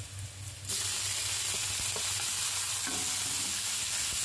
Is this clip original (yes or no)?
yes